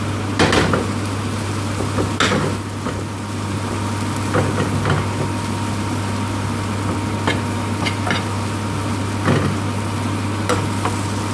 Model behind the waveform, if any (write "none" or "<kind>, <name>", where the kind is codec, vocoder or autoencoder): none